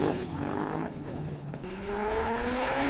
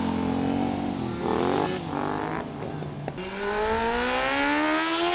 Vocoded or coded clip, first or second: first